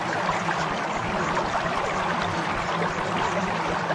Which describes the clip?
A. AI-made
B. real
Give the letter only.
A